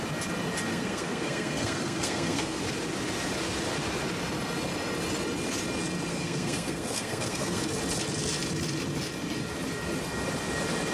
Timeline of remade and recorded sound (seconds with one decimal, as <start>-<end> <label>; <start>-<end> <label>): 0.0-0.7 recorded; 0.7-2.6 remade; 2.6-6.1 recorded; 6.1-7.6 remade; 7.6-10.9 recorded